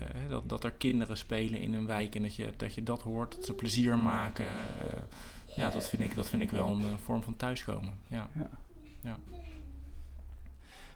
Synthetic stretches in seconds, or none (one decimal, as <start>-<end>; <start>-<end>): 4.0-6.7